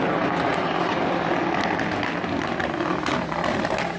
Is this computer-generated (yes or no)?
no